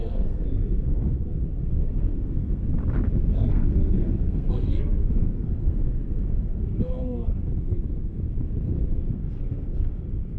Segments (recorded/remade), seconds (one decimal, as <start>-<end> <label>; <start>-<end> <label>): 0.0-2.6 remade; 2.6-3.3 recorded; 3.3-7.5 remade; 7.5-9.1 recorded; 9.1-10.4 remade